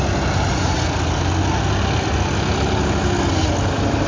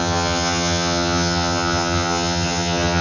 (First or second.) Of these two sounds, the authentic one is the first